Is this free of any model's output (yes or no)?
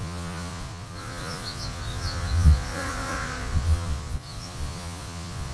no